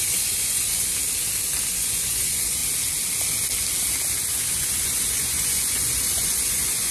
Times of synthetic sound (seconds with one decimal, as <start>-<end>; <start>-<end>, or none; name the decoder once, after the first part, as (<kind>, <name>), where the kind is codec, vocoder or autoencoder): 0.0-0.9 (vocoder, Vocos); 1.7-2.6; 4.5-6.9